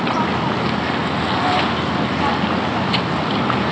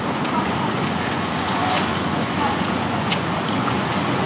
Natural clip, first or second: first